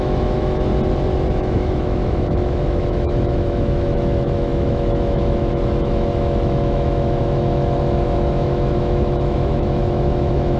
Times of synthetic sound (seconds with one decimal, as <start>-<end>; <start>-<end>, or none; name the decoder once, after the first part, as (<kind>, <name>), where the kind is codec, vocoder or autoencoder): 0.0-0.7 (autoencoder, DAC-VAE); 1.3-10.6